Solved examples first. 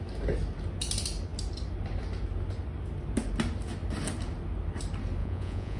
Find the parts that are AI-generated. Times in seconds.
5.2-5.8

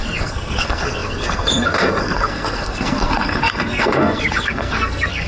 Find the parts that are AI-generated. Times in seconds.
0.0-5.3

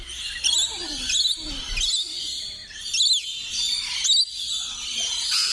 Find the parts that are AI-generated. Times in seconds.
none

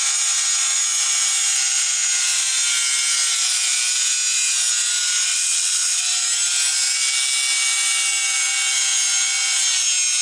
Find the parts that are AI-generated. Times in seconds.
5.3-6.0

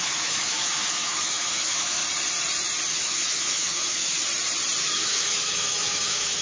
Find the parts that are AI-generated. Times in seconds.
0.0-2.0; 2.9-4.2; 4.8-6.4

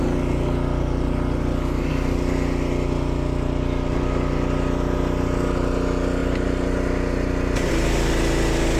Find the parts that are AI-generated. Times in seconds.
none

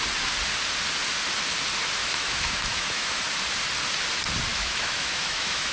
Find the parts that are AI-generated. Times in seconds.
2.0-3.2; 4.5-5.7

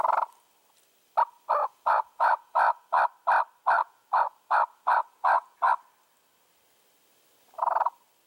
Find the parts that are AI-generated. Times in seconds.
1.6-3.0; 3.8-5.7